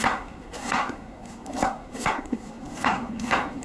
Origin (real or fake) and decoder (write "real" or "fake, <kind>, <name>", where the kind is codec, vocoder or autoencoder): fake, codec, SNAC